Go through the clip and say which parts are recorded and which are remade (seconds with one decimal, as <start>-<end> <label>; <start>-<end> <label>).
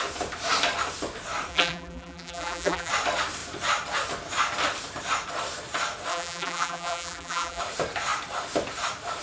0.0-1.5 recorded; 1.5-2.9 remade; 2.9-6.1 recorded; 6.1-7.6 remade; 7.6-9.2 recorded